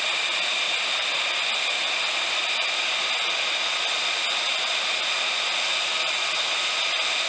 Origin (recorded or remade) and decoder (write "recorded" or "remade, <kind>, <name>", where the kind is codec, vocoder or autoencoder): recorded